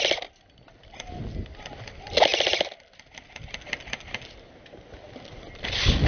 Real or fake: real